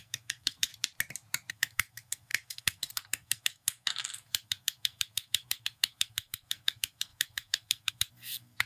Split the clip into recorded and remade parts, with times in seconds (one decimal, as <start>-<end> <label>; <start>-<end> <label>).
0.0-0.7 remade; 0.7-1.5 recorded; 1.5-8.7 remade